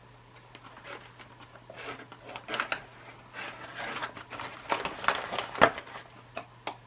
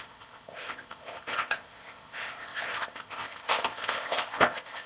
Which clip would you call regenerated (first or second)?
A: second